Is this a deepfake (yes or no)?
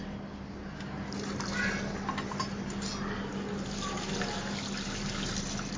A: no